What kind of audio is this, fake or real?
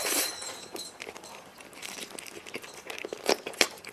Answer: fake